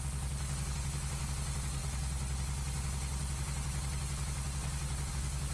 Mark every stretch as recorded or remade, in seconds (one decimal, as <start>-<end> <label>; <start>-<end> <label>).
0.0-5.5 recorded